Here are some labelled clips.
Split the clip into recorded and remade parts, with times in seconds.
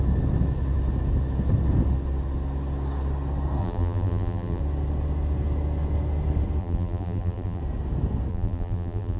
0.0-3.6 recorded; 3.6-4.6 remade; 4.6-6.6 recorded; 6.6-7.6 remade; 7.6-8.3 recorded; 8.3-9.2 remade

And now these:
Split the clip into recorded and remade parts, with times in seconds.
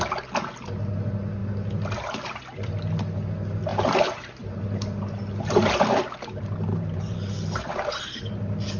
0.0-3.7 recorded; 3.7-4.3 remade; 4.3-6.7 recorded; 6.7-7.3 remade; 7.3-8.8 recorded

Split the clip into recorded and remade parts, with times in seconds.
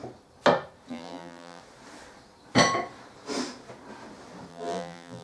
0.0-0.9 recorded; 0.9-1.6 remade; 1.6-4.5 recorded; 4.5-5.2 remade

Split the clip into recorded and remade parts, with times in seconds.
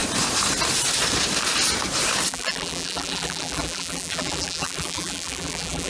0.0-2.3 recorded; 2.3-5.9 remade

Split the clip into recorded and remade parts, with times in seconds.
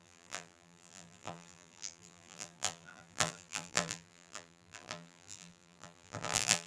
0.0-6.7 remade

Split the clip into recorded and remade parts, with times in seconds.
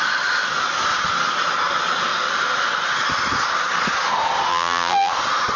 0.0-4.5 recorded; 4.5-5.1 remade; 5.1-5.6 recorded